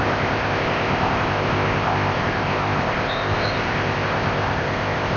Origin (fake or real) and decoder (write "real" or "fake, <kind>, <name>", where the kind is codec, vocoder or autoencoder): fake, codec, ZipCodec